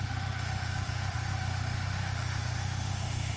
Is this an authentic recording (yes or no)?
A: no